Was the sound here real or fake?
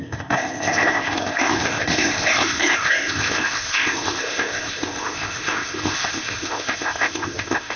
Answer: fake